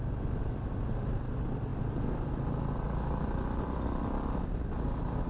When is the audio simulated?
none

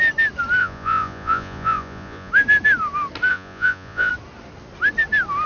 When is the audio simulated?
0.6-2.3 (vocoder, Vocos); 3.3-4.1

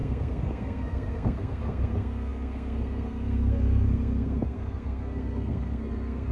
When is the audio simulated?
0.0-6.3 (codec, SNAC)

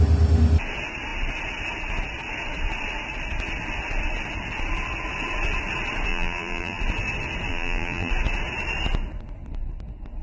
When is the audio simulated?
6.1-6.8 (vocoder, BigVGAN v2); 7.5-8.1

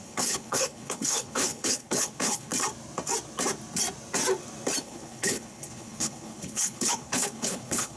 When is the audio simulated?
0.0-2.5 (codec, HILCodec); 4.8-8.0